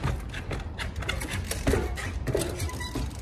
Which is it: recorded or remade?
recorded